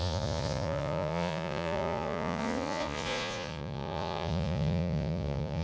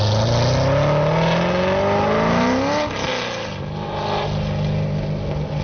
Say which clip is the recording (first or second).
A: second